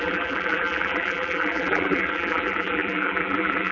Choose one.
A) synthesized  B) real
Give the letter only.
A